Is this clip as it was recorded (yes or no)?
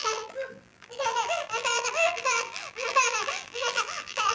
no